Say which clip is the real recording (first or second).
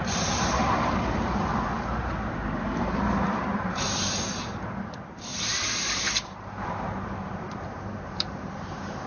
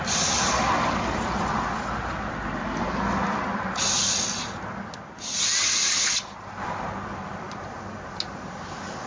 second